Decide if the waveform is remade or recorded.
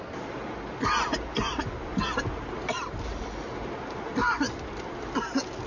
recorded